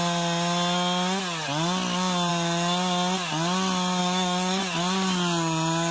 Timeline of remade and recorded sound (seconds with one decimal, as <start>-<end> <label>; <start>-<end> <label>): 0.0-4.0 recorded; 4.0-4.6 remade; 4.6-5.9 recorded